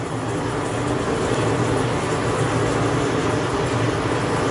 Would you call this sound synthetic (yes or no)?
no